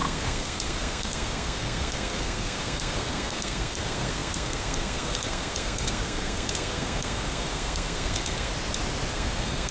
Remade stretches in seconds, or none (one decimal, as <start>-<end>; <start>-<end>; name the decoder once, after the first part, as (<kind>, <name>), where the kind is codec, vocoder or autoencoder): 0.0-8.5 (codec, SNAC); 9.1-9.7